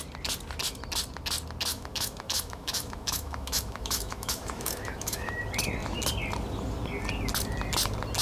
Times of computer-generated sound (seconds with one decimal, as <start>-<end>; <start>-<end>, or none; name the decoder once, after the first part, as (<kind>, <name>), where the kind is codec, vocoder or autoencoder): 1.7-5.3 (autoencoder, DAC-VAE)